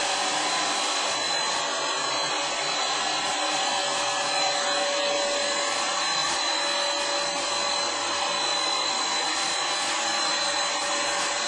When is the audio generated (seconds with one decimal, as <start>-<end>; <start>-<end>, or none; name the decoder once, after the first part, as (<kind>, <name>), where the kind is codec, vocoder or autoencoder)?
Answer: none